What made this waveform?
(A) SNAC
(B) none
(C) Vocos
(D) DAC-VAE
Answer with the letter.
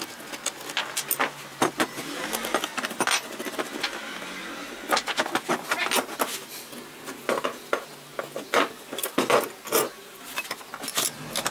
B